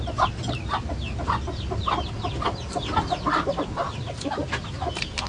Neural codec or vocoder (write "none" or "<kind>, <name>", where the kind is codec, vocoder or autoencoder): none